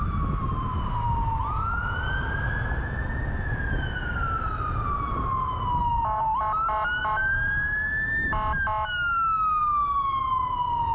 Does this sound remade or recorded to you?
recorded